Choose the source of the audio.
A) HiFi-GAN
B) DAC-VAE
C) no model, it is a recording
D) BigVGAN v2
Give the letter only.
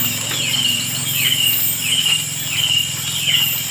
C